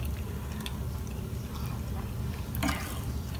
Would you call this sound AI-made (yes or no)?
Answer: no